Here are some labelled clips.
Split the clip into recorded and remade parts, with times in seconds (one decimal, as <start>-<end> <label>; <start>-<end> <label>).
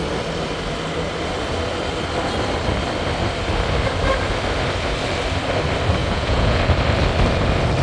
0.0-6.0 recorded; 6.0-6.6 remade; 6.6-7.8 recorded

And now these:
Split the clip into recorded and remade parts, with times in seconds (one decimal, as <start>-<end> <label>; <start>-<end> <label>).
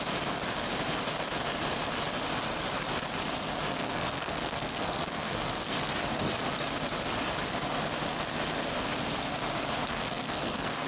0.0-3.7 recorded; 3.7-5.9 remade; 5.9-9.9 recorded; 9.9-10.9 remade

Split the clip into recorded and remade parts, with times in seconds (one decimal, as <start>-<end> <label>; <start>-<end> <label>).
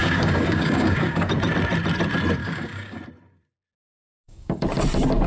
0.0-1.3 remade; 1.3-2.4 recorded; 2.4-3.0 remade; 3.0-3.9 recorded; 3.9-4.6 remade; 4.6-5.3 recorded